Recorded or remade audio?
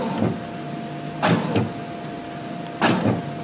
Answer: recorded